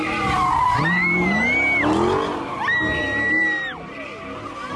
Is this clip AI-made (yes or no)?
no